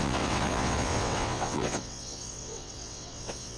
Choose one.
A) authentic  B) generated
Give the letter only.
B